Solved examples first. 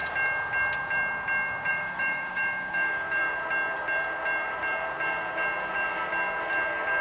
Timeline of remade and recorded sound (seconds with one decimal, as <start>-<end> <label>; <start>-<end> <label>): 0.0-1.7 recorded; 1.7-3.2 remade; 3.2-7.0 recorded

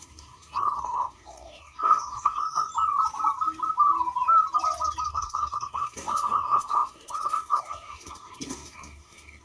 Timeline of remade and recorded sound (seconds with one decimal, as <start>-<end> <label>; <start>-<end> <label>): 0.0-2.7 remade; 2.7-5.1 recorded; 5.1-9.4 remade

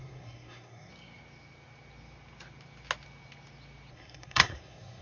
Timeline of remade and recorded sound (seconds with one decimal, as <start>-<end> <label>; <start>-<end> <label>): 0.0-0.9 remade; 0.9-3.9 recorded; 3.9-5.0 remade

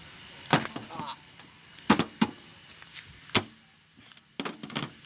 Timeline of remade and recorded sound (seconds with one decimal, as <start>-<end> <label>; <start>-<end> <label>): 0.0-5.1 recorded

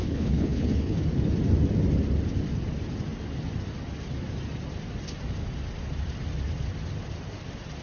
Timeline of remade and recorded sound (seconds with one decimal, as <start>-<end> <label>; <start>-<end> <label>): 0.0-1.0 remade; 1.0-7.8 recorded

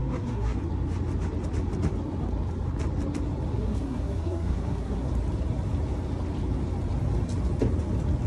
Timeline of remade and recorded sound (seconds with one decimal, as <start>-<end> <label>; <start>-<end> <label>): 0.0-0.6 remade; 0.6-3.5 recorded; 3.5-5.1 remade; 5.1-8.3 recorded

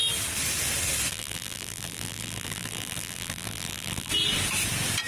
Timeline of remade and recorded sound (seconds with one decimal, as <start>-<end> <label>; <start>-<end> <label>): 0.0-1.1 recorded; 1.1-4.1 remade; 4.1-5.1 recorded